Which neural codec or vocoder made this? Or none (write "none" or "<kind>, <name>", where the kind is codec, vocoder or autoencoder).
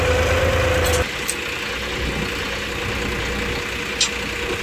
none